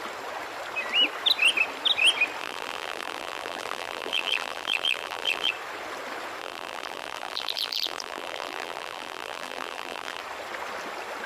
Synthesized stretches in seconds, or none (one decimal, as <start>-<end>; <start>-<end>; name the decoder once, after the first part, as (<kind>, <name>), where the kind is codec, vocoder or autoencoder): 2.4-5.5 (vocoder, BigVGAN v2); 6.4-10.2